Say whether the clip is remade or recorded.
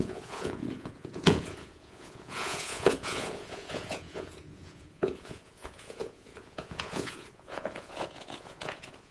remade